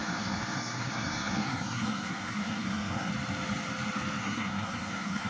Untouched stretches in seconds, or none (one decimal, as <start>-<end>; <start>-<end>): 3.1-4.2